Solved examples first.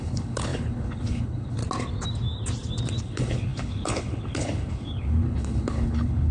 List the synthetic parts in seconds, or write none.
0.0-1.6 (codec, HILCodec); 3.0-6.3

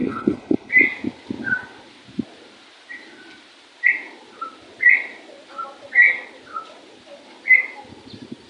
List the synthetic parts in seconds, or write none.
0.0-0.7 (codec, HILCodec)